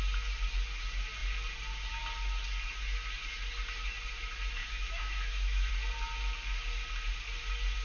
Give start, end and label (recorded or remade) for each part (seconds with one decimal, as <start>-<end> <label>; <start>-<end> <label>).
0.0-4.6 recorded; 4.6-5.7 remade; 5.7-7.8 recorded